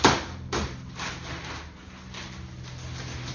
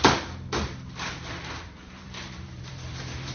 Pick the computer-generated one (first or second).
second